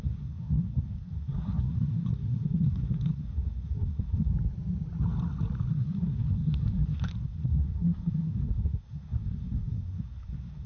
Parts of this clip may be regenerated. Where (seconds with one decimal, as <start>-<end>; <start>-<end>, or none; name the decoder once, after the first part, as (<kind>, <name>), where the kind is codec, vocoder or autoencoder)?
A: 0.0-4.3 (codec, SNAC); 5.7-10.7